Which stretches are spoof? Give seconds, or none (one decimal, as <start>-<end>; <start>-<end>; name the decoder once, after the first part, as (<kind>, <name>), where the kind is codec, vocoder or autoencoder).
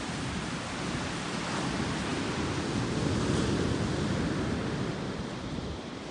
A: none